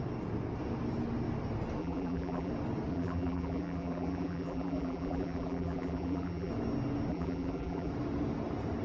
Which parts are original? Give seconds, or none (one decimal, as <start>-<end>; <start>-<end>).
0.0-1.8; 2.5-2.9; 6.5-7.1; 7.9-8.8